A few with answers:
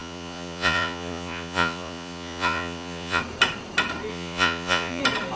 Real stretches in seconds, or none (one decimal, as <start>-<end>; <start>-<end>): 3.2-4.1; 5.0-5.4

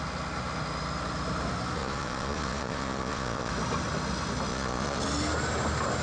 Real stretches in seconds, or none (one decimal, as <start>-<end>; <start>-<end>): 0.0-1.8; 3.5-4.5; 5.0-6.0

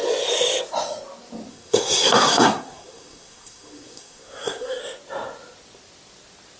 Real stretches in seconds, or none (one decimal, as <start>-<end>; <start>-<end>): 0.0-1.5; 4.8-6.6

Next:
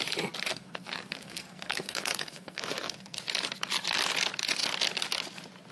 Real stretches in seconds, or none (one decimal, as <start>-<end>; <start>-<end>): 0.0-0.5; 3.2-5.7